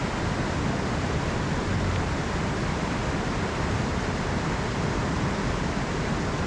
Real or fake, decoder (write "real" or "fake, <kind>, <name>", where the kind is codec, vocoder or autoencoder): real